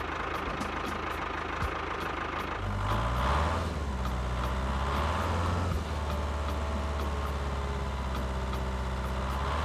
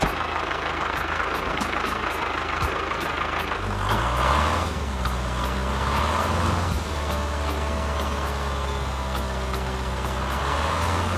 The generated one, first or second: second